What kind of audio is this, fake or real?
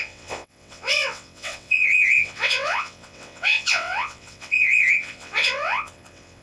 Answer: fake